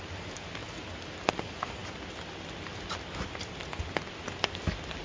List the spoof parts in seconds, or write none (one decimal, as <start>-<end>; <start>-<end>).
none